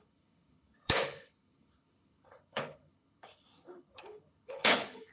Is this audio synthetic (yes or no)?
yes